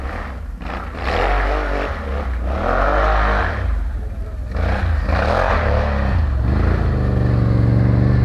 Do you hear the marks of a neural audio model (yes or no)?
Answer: no